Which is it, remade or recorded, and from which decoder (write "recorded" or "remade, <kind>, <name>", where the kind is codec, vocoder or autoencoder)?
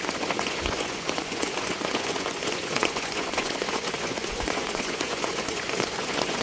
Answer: remade, vocoder, Vocos